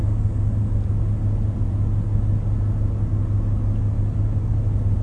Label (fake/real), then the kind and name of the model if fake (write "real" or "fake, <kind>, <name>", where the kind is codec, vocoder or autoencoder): real